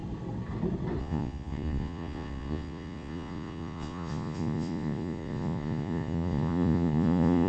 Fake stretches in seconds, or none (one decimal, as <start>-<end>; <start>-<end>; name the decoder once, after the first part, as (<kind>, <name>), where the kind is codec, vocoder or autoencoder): 1.0-7.5 (vocoder, Vocos)